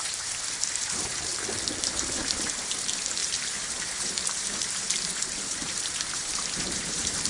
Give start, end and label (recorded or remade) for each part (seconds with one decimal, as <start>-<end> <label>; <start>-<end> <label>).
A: 0.0-1.3 remade; 1.3-1.9 recorded; 1.9-7.3 remade